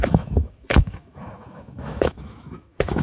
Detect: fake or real fake